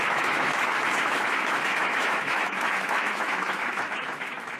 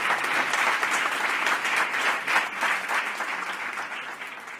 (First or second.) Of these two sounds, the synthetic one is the first